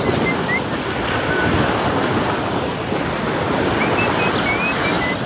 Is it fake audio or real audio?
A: real